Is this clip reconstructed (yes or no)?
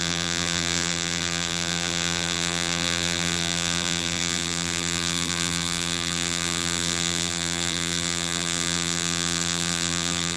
yes